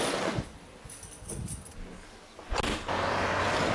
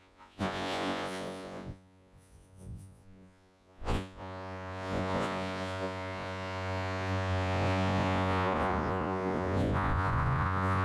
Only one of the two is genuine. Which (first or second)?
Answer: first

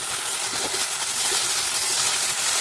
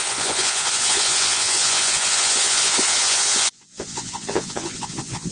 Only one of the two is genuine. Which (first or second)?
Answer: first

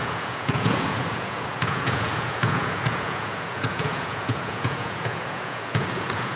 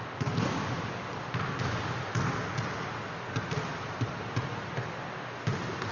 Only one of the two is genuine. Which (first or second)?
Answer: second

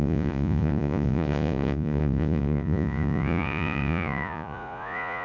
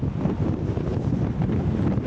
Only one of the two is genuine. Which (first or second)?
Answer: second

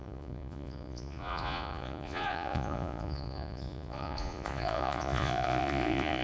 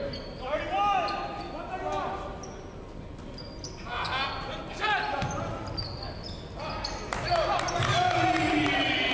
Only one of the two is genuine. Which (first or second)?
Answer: second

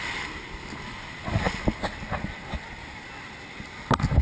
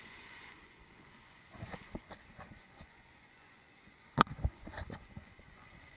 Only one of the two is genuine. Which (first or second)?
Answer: first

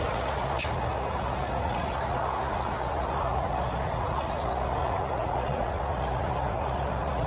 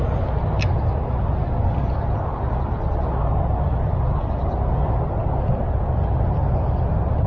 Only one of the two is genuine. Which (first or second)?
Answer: second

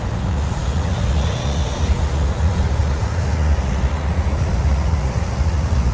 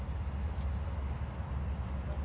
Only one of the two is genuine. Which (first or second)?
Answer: second